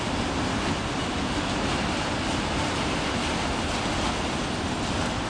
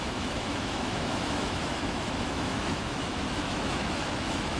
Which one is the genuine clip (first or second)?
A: first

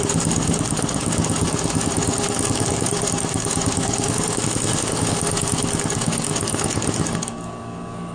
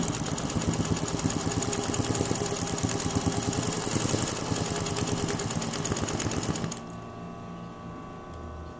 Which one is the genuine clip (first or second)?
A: second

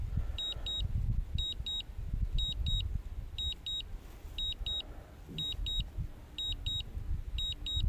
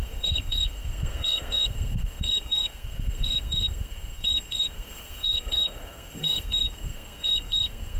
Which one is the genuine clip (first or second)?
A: first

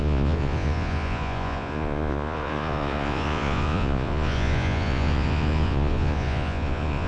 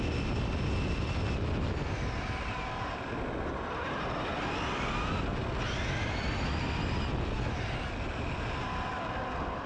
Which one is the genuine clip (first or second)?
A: second